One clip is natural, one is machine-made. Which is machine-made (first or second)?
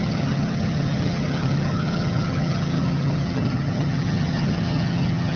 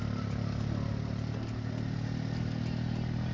first